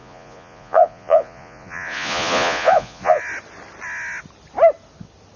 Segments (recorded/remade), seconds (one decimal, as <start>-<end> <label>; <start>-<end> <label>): 0.0-3.2 remade; 3.2-5.4 recorded